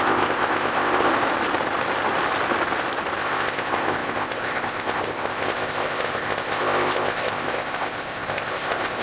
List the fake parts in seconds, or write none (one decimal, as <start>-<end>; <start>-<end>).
0.0-1.1; 3.2-9.0